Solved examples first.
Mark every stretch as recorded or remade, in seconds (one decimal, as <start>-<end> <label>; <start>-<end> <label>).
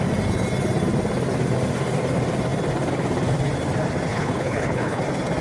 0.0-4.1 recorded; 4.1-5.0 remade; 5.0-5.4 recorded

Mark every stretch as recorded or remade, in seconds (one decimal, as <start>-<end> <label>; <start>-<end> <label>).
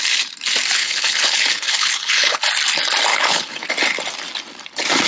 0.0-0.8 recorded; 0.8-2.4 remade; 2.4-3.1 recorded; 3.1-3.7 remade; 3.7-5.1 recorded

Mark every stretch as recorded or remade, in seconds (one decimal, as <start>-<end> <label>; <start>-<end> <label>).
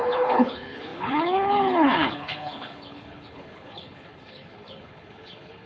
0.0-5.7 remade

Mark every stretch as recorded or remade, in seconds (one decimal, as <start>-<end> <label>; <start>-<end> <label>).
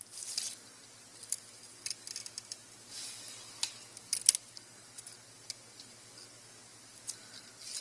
0.0-7.8 recorded